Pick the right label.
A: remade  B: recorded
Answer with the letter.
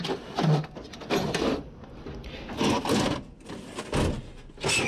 B